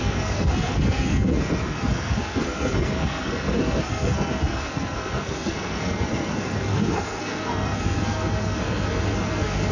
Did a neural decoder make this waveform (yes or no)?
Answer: yes